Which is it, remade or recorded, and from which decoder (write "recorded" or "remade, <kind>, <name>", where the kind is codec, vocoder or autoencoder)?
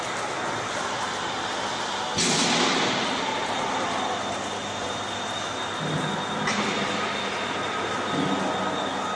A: recorded